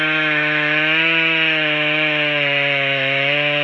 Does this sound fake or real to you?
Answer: fake